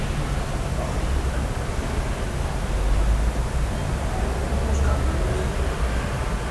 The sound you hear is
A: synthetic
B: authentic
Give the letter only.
B